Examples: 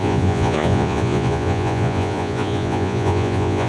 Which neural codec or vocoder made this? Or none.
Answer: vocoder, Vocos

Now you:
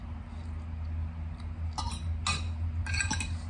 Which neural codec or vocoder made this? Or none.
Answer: none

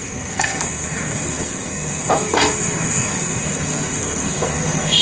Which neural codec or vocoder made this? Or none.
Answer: codec, SNAC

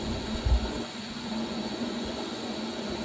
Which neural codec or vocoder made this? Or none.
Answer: vocoder, Vocos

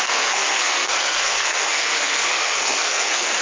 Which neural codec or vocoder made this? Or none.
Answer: codec, SNAC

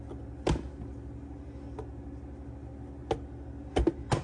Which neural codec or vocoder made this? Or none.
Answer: none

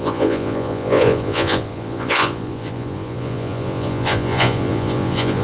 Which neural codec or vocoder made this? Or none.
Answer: vocoder, Vocos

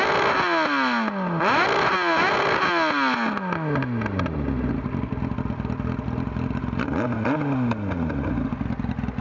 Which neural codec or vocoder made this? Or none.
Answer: none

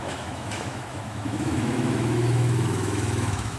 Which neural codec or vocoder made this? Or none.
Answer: autoencoder, DAC-VAE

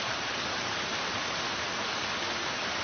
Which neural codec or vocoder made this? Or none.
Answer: none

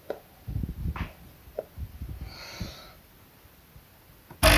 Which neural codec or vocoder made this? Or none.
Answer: none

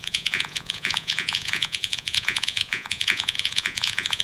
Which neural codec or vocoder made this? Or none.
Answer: vocoder, Vocos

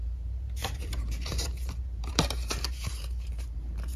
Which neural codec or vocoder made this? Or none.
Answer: vocoder, BigVGAN v2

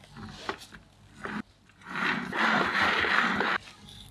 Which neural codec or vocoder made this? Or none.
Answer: none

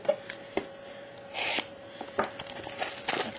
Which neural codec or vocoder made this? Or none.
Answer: vocoder, BigVGAN v2